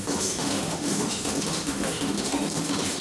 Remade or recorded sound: remade